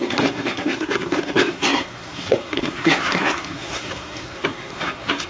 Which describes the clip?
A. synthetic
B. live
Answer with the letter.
A